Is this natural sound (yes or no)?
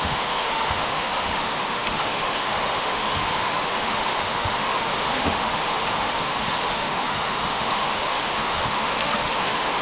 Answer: no